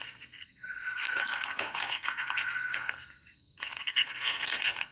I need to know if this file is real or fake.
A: fake